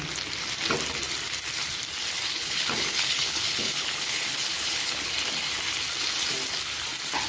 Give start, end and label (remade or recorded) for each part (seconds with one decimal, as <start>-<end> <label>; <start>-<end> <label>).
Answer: 0.0-2.3 recorded; 2.3-5.1 remade; 5.1-7.3 recorded